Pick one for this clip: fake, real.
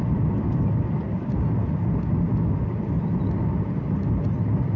real